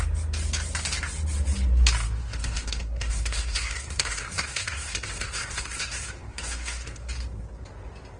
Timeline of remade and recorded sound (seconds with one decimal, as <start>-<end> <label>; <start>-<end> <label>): 0.0-2.2 recorded; 2.2-7.1 remade; 7.1-8.2 recorded